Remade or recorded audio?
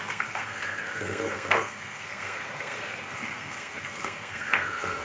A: remade